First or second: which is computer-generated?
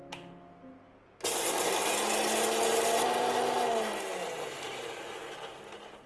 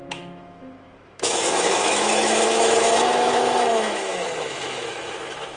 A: second